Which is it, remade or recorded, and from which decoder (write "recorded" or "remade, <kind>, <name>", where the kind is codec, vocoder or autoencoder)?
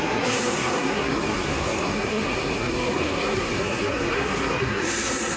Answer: remade, codec, SNAC